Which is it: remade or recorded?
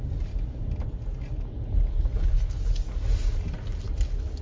recorded